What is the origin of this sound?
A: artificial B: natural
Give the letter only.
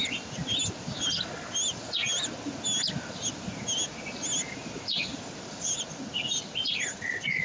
B